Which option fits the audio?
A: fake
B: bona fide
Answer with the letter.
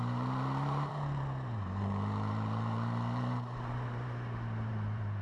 A